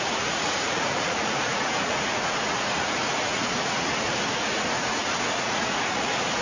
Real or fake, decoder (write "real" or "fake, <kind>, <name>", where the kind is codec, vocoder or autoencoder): fake, vocoder, Vocos